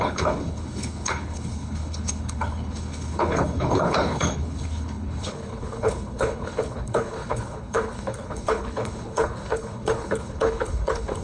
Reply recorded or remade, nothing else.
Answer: remade